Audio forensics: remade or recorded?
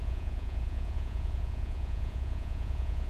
remade